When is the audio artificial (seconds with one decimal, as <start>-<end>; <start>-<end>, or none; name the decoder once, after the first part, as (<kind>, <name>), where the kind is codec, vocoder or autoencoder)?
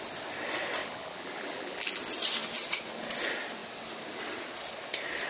0.8-2.0 (vocoder, BigVGAN v2)